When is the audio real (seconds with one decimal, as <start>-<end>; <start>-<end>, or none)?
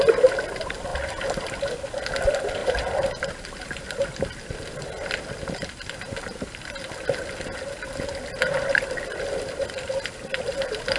0.0-11.0